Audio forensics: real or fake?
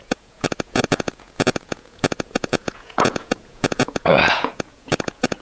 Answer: fake